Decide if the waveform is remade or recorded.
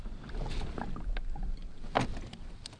recorded